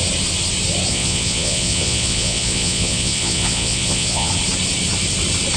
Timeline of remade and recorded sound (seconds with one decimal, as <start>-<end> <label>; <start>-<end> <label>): 0.0-0.9 recorded; 0.9-4.3 remade; 4.3-5.6 recorded